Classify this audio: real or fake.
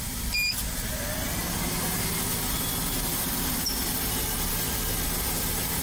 real